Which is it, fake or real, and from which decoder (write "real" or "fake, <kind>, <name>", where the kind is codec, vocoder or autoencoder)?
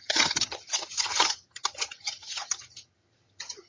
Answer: fake, vocoder, HiFi-GAN